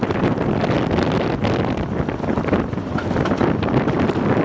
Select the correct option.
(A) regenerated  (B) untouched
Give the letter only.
A